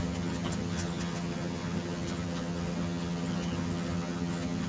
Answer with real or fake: fake